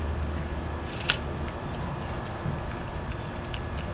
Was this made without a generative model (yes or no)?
yes